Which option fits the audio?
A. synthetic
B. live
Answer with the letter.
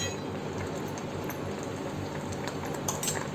B